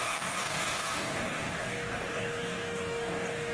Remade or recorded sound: remade